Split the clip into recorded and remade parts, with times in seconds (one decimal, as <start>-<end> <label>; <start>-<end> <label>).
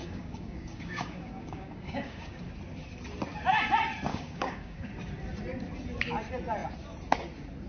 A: 0.0-2.4 remade; 2.4-4.1 recorded; 4.1-4.9 remade; 4.9-7.7 recorded